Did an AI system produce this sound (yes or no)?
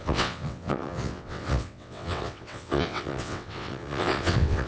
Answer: yes